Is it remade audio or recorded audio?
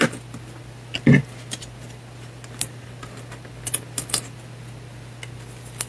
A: recorded